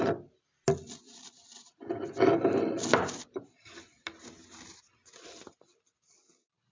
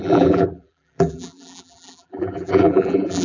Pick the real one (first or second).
first